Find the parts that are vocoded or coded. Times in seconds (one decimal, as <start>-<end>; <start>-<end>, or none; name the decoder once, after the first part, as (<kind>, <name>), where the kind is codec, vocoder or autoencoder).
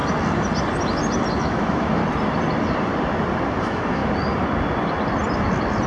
1.4-2.0 (autoencoder, DAC-VAE); 3.6-4.0